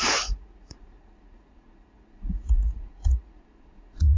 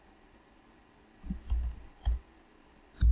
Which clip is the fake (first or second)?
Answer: first